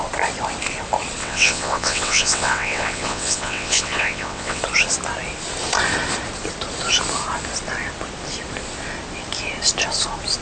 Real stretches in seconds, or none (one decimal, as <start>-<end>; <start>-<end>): 0.0-1.2; 4.6-10.4